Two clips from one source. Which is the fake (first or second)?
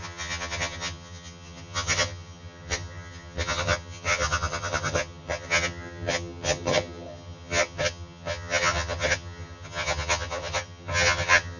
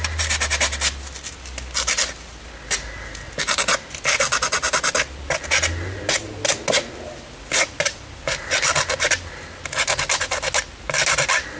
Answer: first